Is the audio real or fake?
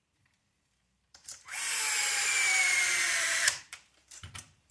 fake